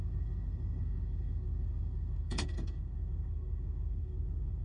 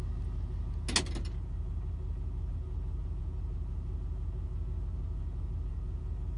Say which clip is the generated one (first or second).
first